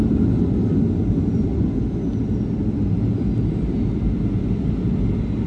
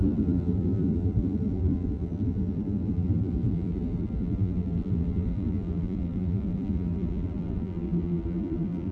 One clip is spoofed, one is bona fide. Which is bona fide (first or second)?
first